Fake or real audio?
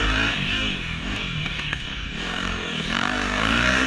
fake